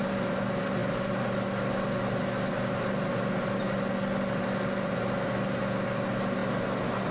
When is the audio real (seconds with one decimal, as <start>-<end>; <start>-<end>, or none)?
0.0-7.1